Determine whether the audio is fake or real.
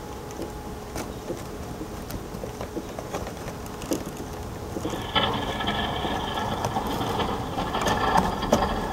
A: real